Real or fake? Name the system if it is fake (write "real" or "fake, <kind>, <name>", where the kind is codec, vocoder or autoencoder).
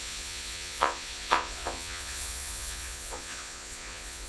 fake, vocoder, Vocos